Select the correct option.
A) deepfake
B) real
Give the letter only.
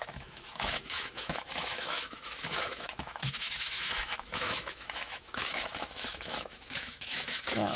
A